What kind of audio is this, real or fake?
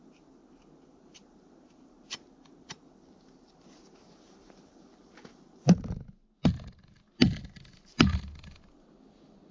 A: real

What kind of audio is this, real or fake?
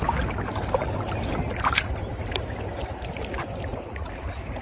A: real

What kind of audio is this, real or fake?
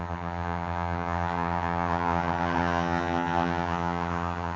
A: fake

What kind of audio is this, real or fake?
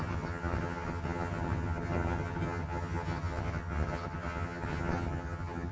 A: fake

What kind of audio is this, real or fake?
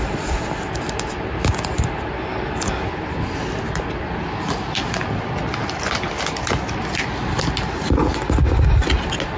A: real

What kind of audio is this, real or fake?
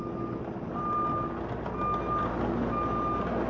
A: real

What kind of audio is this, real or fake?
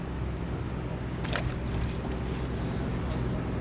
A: real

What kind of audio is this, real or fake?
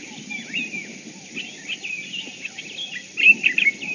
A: real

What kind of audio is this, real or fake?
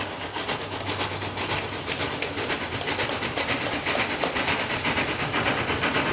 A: real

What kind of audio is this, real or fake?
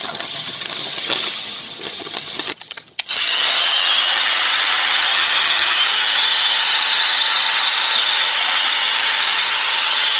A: fake